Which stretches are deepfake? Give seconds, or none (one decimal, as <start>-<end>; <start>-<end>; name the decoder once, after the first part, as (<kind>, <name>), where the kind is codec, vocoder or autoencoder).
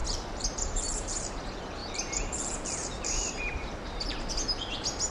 0.0-1.2 (vocoder, BigVGAN v2); 1.8-4.3